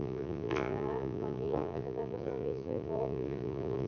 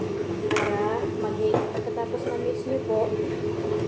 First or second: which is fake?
first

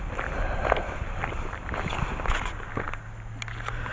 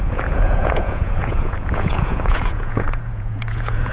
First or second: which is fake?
second